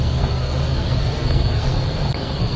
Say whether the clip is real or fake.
fake